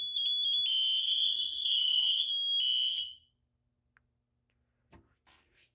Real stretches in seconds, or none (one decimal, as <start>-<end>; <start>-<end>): 0.0-1.0; 2.3-5.7